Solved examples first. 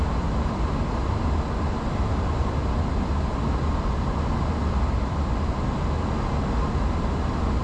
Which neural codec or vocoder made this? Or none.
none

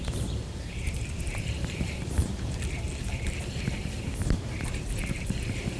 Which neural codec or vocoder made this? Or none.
vocoder, BigVGAN v2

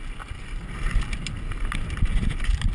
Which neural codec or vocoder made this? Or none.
none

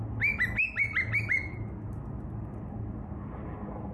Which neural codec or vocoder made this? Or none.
none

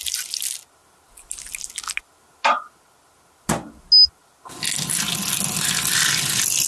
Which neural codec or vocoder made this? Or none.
none